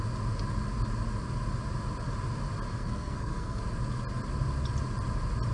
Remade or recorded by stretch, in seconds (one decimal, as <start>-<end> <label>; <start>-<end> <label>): 0.0-2.7 recorded; 2.7-3.6 remade; 3.6-5.5 recorded